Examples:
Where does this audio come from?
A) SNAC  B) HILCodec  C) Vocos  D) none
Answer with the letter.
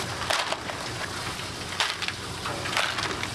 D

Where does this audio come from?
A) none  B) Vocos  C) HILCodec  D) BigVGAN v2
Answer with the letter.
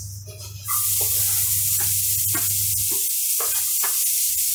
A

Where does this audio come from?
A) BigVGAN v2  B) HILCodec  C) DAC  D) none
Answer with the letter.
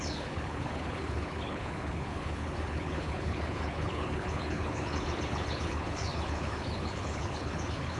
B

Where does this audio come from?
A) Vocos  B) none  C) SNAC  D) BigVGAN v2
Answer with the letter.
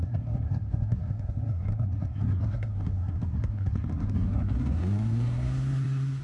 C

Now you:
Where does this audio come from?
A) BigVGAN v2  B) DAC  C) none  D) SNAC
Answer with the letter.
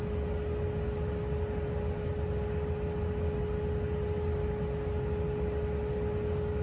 C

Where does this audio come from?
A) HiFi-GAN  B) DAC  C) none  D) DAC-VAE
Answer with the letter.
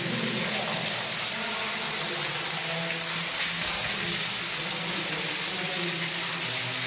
C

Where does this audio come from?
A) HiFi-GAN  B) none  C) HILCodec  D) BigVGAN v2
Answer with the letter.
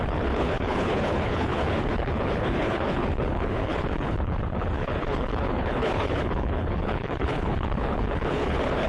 C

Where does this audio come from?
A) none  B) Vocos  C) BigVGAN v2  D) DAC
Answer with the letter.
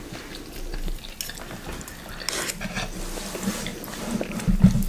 A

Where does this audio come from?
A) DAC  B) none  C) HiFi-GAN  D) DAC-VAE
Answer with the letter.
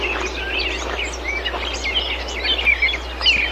B